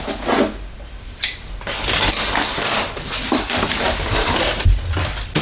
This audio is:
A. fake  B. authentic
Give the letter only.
B